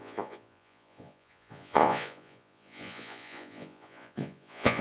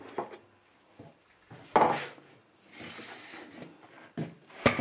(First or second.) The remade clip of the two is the first